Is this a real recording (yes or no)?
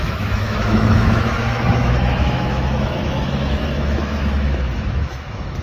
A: no